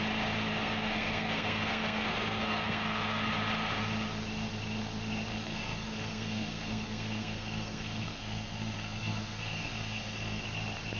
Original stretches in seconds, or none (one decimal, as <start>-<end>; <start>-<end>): 0.0-0.5; 3.3-5.3; 10.4-11.0